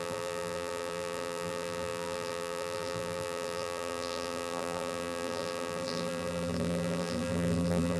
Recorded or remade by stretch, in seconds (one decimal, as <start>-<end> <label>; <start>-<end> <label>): 0.0-8.0 remade